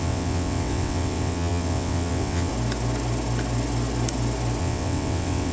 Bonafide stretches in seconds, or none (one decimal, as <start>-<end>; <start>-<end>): 2.5-4.6